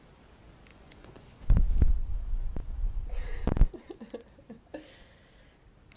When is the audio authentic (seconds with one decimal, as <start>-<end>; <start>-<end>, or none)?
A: 0.0-0.7; 1.6-2.1; 3.0-6.0